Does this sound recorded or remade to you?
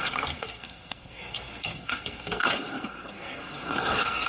remade